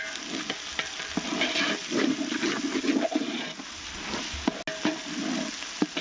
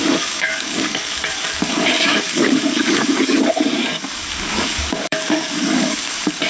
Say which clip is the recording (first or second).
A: first